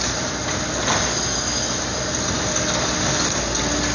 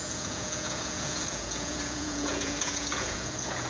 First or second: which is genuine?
first